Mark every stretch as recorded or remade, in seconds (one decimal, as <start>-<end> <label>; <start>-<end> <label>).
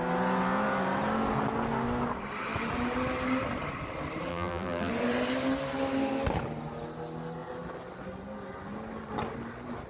0.0-4.3 recorded; 4.3-4.9 remade; 4.9-9.9 recorded